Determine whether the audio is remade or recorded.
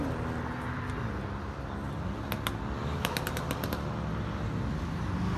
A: recorded